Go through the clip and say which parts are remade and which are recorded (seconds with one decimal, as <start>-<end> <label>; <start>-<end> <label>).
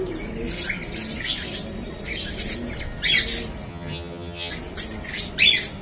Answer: 0.0-3.7 recorded; 3.7-4.5 remade; 4.5-5.8 recorded